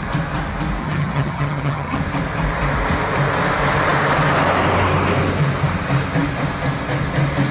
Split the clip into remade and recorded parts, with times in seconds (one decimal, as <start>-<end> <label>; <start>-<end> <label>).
0.0-0.8 recorded; 0.8-2.0 remade; 2.0-7.5 recorded